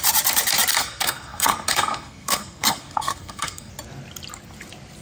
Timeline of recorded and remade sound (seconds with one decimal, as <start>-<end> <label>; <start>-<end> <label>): 0.0-0.7 recorded; 0.7-3.7 remade; 3.7-5.0 recorded